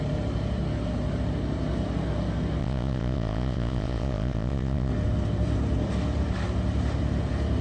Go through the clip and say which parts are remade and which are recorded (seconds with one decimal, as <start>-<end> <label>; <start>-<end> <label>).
0.0-2.6 recorded; 2.6-4.9 remade; 4.9-7.6 recorded

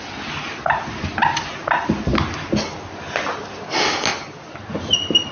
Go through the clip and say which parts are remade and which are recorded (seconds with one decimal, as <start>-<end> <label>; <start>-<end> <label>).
0.0-5.3 recorded

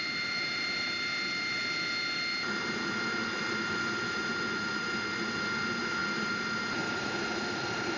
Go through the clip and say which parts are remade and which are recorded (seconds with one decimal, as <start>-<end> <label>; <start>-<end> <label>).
0.0-8.0 recorded